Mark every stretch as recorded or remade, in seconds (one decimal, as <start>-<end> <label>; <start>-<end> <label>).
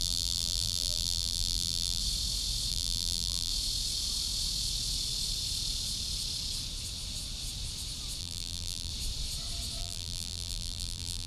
0.0-2.0 remade; 2.0-2.7 recorded; 2.7-3.5 remade; 3.5-8.2 recorded; 8.2-8.9 remade; 8.9-9.8 recorded; 9.8-11.3 remade